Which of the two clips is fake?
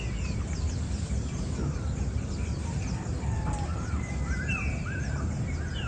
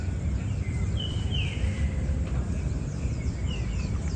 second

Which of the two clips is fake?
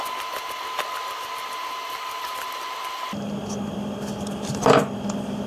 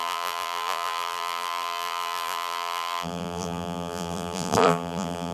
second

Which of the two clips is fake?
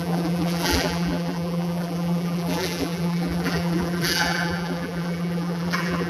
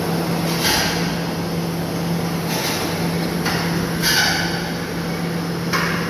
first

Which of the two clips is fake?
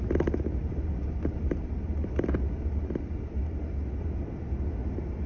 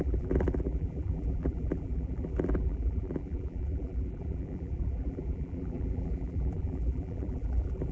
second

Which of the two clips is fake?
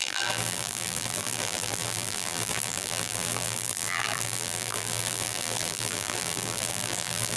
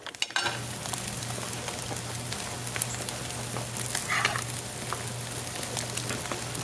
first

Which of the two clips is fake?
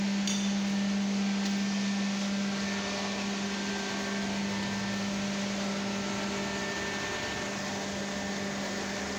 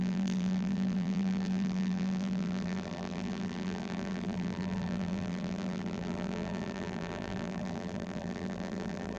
second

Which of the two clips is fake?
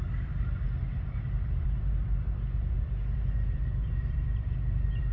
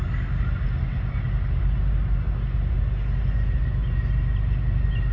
first